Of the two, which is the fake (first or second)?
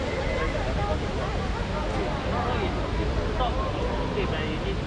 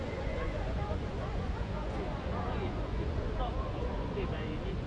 second